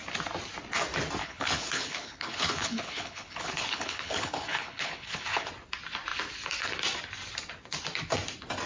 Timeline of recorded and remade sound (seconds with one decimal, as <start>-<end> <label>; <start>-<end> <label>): 0.0-1.2 recorded; 1.2-5.5 remade; 5.5-8.7 recorded